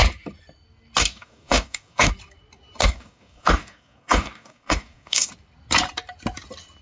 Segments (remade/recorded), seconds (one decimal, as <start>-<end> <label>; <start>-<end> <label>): 0.0-1.0 recorded; 1.0-2.1 remade; 2.1-2.8 recorded; 2.8-5.3 remade; 5.3-6.8 recorded